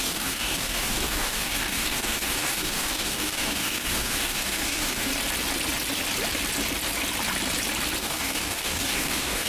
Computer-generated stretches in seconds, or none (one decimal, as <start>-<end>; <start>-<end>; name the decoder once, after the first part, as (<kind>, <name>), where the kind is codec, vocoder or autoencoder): 0.0-5.1 (codec, DAC); 8.0-9.5